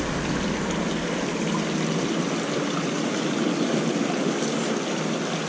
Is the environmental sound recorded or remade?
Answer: recorded